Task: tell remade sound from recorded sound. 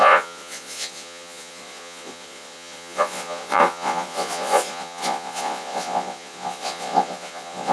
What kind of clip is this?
remade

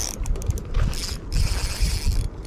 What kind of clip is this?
recorded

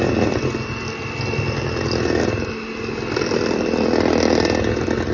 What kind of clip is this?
recorded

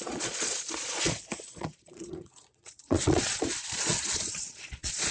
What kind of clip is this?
remade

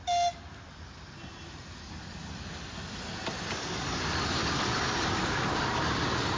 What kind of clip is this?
recorded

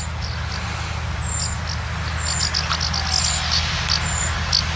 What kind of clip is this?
recorded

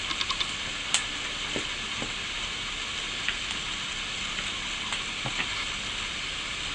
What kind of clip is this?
recorded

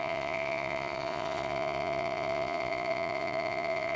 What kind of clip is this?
remade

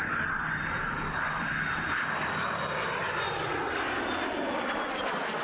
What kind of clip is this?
recorded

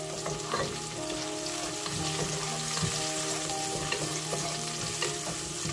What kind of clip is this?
recorded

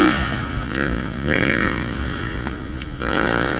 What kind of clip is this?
remade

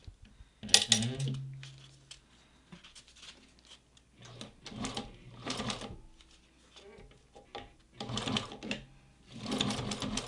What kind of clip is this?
recorded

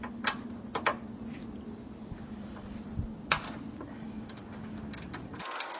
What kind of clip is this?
recorded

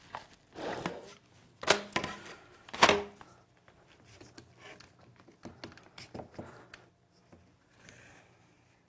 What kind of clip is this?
recorded